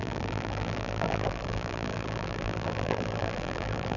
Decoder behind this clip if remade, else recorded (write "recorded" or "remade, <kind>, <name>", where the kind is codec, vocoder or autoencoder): remade, vocoder, BigVGAN v2